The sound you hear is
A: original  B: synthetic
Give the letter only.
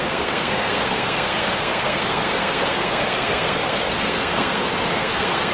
B